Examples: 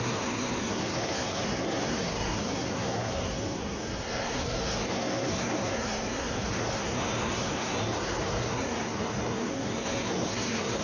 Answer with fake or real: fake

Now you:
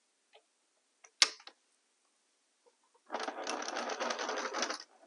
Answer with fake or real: real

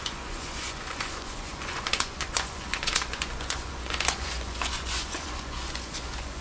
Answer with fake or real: fake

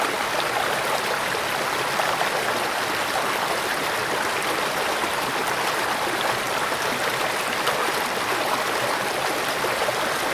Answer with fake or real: real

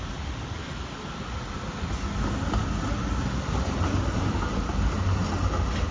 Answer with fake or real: real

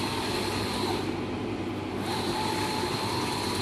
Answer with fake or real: fake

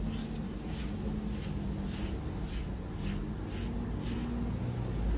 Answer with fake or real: real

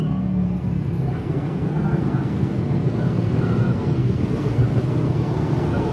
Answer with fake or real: fake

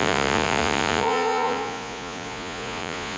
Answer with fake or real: fake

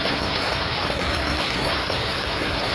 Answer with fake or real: fake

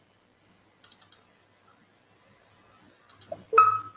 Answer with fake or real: real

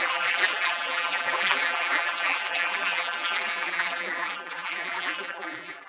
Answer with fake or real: fake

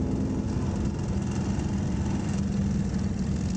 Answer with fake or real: real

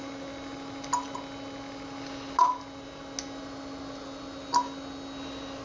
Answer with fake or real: real